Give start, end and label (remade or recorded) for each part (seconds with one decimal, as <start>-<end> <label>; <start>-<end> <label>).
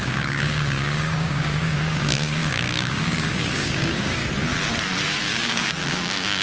0.0-4.2 remade; 4.2-5.2 recorded; 5.2-6.4 remade